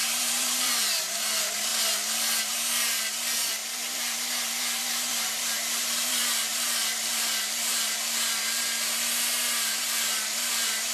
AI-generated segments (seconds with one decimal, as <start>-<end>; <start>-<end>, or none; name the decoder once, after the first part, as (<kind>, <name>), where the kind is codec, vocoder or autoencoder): 0.0-1.7 (vocoder, BigVGAN v2); 2.4-10.9